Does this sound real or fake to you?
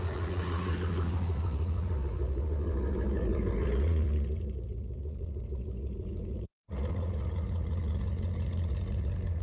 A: fake